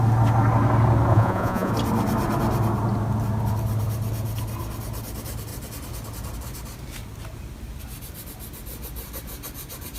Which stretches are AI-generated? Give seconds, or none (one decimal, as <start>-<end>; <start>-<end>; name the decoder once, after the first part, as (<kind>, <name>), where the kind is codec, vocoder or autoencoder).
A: 1.1-1.7 (vocoder, Vocos)